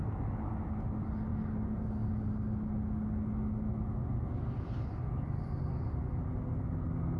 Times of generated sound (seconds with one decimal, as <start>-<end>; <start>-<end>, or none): none